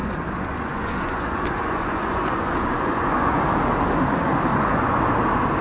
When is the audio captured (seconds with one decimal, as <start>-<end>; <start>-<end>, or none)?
3.4-4.5; 5.0-5.6